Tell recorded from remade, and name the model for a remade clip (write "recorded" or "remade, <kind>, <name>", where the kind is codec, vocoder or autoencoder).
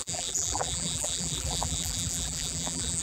remade, vocoder, BigVGAN v2